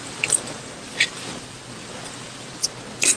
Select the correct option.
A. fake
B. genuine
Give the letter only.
B